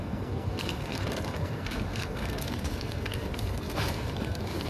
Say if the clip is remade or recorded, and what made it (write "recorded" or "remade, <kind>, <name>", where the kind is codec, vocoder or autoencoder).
remade, codec, SNAC